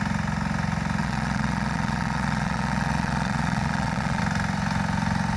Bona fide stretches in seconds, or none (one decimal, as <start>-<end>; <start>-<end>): 0.0-1.0; 4.2-5.4